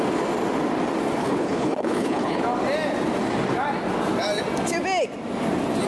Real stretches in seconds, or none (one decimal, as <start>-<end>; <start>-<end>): 0.0-1.2; 2.4-5.9